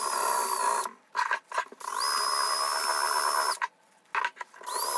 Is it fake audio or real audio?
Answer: real